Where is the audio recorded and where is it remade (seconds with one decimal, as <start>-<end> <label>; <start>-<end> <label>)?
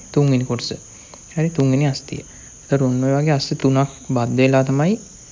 0.0-3.6 recorded; 3.6-4.7 remade; 4.7-5.3 recorded